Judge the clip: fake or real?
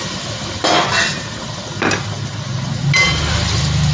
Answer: real